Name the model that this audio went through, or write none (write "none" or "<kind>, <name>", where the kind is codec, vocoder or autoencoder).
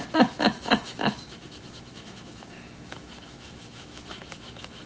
autoencoder, DAC-VAE